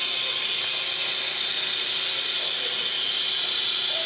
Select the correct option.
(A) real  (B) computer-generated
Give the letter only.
A